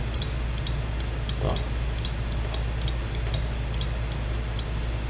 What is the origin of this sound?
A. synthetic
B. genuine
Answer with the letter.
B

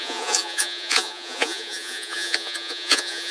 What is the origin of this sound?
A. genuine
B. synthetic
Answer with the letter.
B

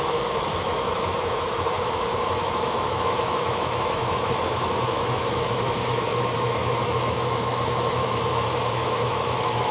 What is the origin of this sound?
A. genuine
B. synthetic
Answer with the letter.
B